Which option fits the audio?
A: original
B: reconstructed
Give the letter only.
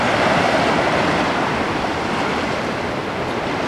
A